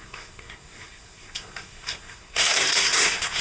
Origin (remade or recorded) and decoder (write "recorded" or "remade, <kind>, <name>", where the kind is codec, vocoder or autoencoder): remade, codec, SNAC